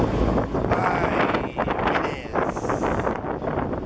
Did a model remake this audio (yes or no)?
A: no